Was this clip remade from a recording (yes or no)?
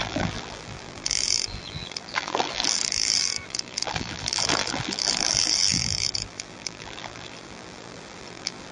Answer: yes